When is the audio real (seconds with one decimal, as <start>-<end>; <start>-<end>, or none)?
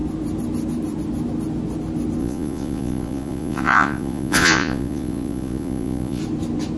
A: 0.0-2.2; 6.2-6.8